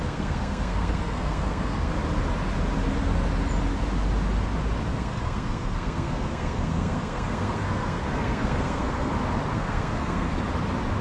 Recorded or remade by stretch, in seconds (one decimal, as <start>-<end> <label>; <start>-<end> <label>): 0.0-1.9 remade; 1.9-4.9 recorded; 4.9-9.1 remade; 9.1-9.5 recorded; 9.5-10.3 remade; 10.3-11.0 recorded